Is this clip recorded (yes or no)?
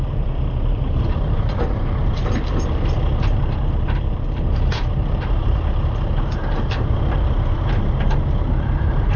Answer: no